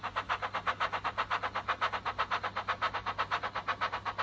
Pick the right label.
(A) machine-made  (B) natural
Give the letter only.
B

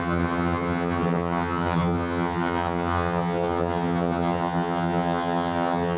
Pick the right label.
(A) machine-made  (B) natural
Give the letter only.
A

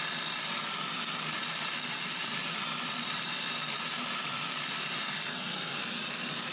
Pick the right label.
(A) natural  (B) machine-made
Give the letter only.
B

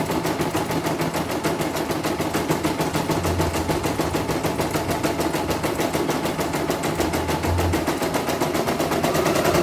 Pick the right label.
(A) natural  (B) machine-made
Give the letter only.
A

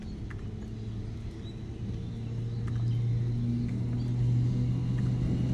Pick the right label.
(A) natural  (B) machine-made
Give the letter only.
A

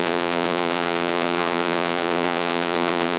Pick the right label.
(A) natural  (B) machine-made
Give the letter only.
B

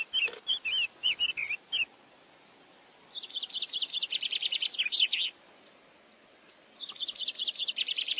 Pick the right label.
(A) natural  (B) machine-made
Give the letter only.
A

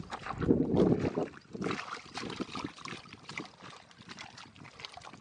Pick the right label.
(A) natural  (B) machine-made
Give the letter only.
B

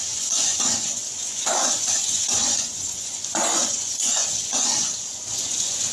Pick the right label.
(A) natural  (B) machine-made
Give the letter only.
B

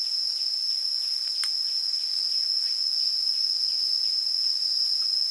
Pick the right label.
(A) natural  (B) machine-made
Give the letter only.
A